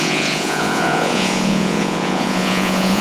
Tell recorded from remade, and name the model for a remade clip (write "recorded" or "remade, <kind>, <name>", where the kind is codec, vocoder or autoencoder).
remade, vocoder, Vocos